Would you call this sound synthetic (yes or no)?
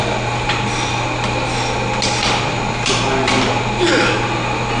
no